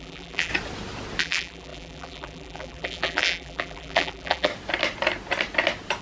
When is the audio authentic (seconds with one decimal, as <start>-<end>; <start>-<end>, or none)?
0.5-1.2; 4.5-6.0

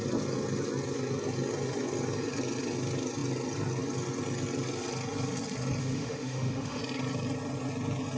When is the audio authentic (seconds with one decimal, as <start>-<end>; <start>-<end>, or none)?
0.0-5.8; 6.8-8.2

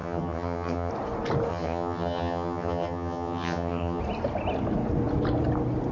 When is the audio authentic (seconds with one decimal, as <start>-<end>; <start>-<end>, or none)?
0.9-1.5; 4.0-5.9

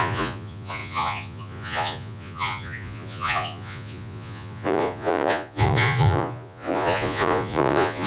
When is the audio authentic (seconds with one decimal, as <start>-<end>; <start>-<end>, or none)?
none

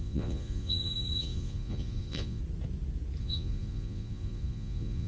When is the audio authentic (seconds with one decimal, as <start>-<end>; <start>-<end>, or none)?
2.4-3.2